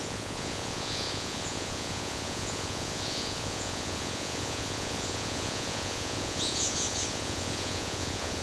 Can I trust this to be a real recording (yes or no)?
no